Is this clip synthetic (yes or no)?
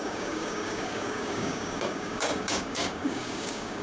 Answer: yes